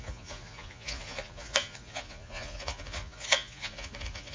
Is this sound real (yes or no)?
no